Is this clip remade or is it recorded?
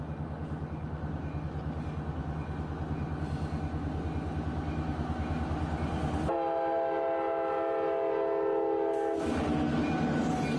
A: recorded